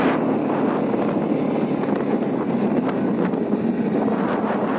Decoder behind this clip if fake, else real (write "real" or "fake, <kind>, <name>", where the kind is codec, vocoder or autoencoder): real